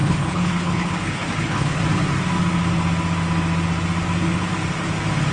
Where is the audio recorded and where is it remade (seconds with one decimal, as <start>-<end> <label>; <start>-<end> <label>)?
0.0-1.8 remade; 1.8-5.3 recorded